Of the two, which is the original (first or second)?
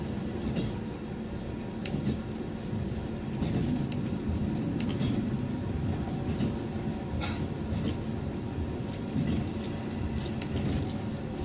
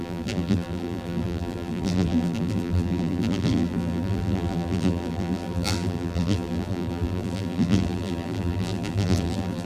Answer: first